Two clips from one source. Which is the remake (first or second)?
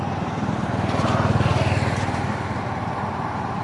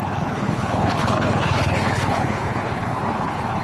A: second